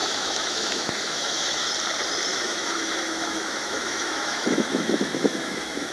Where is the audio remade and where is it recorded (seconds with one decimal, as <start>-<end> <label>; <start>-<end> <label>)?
0.0-1.7 remade; 1.7-2.3 recorded; 2.3-5.9 remade